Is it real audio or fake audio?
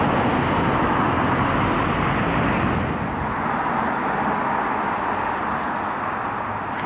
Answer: real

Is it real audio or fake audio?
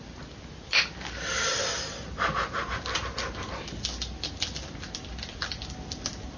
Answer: real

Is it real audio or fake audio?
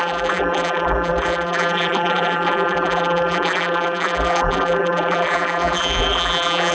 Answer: fake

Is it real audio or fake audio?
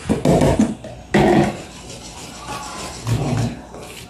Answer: real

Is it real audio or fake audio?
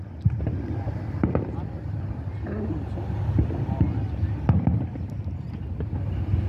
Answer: real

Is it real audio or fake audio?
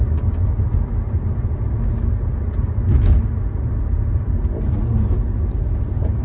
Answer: real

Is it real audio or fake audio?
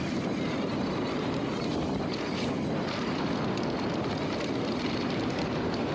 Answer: real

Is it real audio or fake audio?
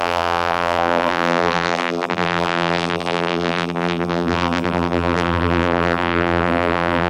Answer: fake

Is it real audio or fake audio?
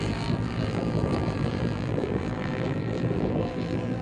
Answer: fake